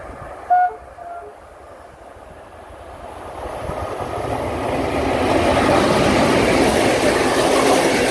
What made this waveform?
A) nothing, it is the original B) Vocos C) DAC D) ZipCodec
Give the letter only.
A